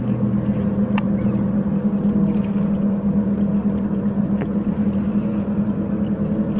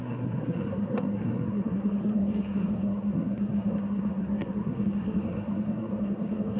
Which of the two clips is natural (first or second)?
first